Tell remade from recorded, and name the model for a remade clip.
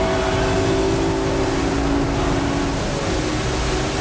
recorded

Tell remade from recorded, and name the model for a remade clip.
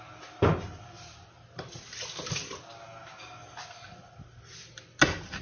recorded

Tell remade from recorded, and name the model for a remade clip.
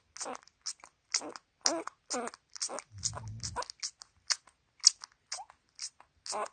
recorded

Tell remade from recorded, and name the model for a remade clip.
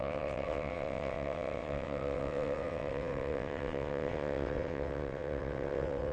remade, vocoder, WaveNeXt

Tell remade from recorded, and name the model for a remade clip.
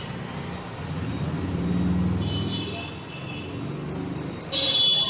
recorded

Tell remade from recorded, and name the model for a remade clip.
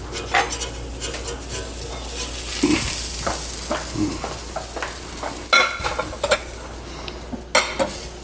recorded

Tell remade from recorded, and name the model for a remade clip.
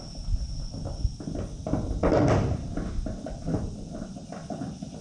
recorded